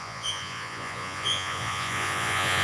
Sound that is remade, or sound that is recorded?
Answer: remade